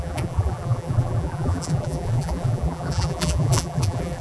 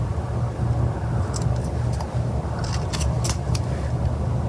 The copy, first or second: first